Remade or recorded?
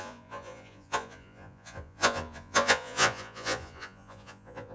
remade